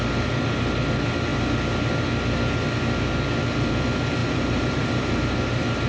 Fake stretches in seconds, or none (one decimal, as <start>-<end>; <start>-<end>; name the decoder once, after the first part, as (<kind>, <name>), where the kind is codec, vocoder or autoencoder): 4.2-5.9 (vocoder, BigVGAN v2)